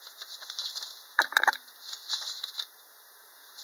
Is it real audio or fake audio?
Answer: fake